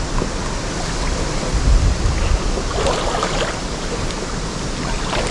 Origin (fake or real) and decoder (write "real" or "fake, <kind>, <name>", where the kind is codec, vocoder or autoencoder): real